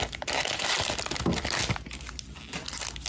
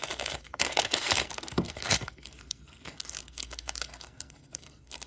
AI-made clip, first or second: second